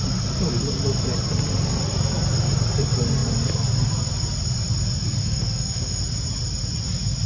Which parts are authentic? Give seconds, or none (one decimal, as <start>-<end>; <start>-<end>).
0.0-5.2; 6.0-7.3